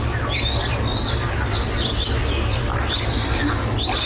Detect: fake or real real